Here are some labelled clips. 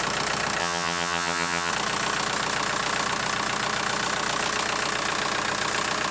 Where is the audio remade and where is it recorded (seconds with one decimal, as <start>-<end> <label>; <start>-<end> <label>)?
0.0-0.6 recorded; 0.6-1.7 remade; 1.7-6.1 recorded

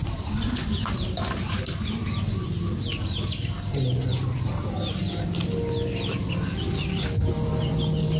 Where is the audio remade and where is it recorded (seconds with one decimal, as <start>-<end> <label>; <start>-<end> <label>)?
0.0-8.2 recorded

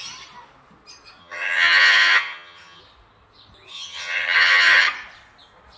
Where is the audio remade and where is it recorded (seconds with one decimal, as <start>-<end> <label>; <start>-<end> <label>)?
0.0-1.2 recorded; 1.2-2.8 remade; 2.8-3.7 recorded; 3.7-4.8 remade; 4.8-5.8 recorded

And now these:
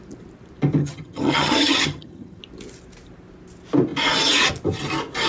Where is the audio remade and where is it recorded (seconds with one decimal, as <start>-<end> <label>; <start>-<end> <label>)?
0.0-0.8 recorded; 0.8-2.4 remade; 2.4-5.3 recorded